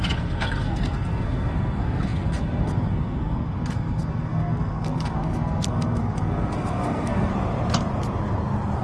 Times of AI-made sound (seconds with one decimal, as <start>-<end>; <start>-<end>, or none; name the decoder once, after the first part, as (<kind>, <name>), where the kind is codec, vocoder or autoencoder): 0.0-7.3 (codec, SNAC)